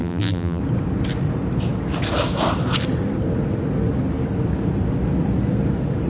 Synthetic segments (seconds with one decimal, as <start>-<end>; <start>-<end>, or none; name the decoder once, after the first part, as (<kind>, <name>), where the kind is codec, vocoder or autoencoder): 0.0-0.6 (vocoder, BigVGAN v2)